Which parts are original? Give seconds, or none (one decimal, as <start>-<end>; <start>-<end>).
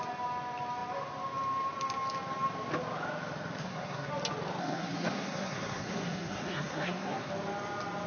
0.0-3.6; 4.1-4.6; 7.3-8.1